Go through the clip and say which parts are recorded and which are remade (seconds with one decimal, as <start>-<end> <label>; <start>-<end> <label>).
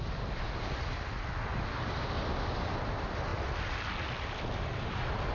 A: 0.0-5.3 recorded